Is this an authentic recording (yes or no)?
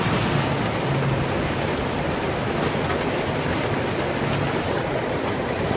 yes